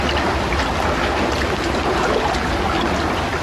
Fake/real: real